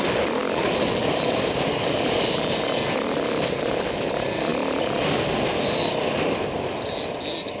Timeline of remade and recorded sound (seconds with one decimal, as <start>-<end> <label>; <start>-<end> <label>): 0.0-0.4 recorded; 0.4-2.7 remade; 2.7-7.6 recorded